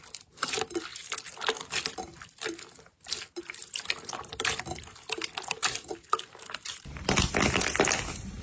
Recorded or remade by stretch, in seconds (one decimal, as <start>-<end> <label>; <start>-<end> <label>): 0.0-8.4 recorded